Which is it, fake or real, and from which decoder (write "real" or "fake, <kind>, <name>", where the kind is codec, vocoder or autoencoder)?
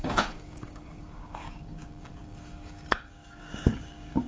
fake, codec, DAC